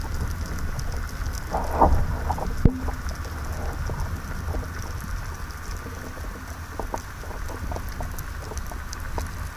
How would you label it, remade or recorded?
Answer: recorded